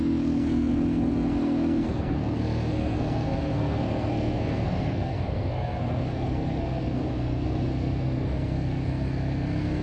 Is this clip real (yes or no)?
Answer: no